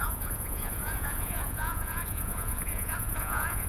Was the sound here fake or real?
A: fake